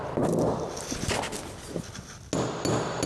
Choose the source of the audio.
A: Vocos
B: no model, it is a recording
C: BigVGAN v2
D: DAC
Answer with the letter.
B